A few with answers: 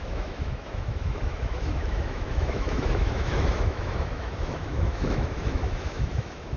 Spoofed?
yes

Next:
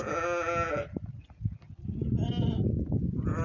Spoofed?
no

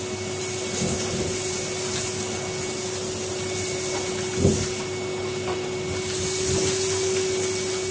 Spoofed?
no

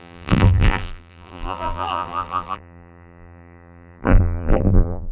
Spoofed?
yes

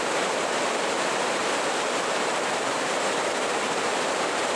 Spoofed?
yes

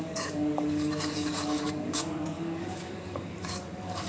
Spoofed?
yes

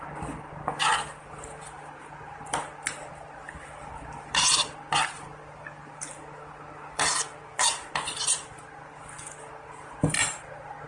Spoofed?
yes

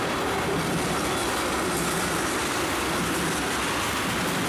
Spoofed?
no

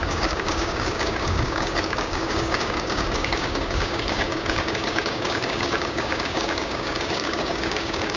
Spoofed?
yes